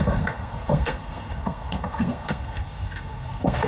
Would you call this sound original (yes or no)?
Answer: no